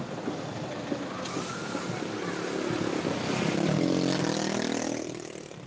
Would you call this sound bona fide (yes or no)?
yes